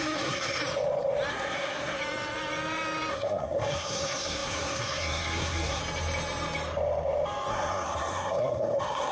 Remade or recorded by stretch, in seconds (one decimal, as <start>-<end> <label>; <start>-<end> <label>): 0.0-0.6 remade; 0.6-1.3 recorded; 1.3-2.0 remade; 2.0-3.1 recorded; 3.1-5.8 remade; 5.8-7.5 recorded; 7.5-9.1 remade